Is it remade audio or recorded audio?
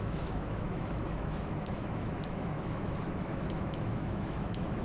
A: remade